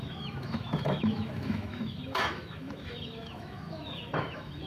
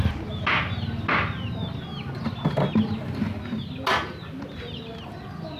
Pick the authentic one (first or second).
second